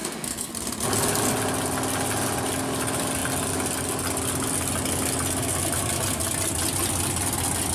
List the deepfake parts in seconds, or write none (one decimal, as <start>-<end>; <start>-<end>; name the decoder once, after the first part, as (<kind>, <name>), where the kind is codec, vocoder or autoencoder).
0.0-0.5 (codec, SNAC)